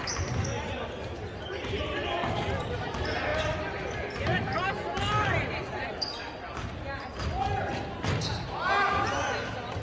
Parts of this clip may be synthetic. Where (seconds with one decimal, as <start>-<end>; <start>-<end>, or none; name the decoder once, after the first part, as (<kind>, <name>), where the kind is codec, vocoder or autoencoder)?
none